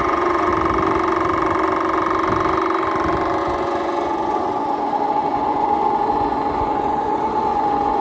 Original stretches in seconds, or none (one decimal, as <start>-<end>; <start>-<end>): 0.5-3.4